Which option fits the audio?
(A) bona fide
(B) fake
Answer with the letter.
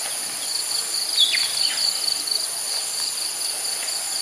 A